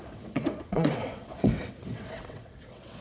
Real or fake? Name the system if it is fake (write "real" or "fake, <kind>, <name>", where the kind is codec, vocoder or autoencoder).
fake, vocoder, WaveNeXt